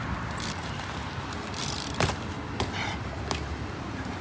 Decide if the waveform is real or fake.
real